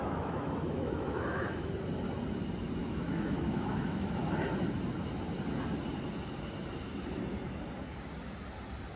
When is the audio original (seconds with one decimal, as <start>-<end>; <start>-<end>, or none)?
1.7-2.8; 4.2-9.0